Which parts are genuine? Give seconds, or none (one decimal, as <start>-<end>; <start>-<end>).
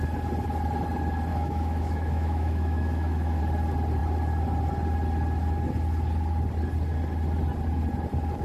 0.0-1.3; 3.4-8.4